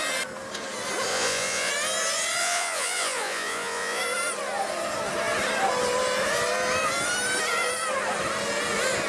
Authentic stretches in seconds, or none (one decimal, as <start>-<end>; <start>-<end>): 0.0-1.1; 1.7-2.4; 4.0-9.1